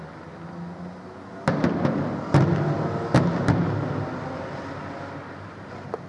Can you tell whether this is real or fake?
real